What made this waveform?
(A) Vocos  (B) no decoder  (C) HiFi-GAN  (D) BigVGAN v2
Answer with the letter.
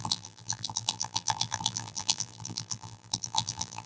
D